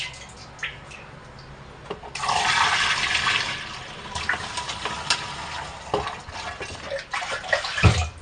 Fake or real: real